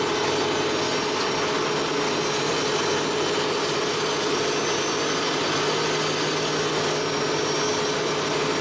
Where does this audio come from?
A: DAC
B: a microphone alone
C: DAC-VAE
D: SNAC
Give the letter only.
B